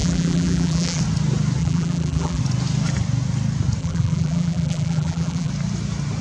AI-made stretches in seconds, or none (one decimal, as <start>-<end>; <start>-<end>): 0.0-1.0; 1.6-2.4; 3.8-5.5